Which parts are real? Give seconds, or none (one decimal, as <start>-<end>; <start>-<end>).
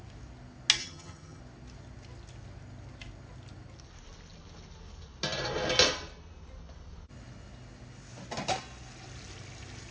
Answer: 0.0-0.8; 1.4-9.9